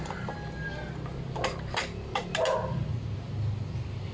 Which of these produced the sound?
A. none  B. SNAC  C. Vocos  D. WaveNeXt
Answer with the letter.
A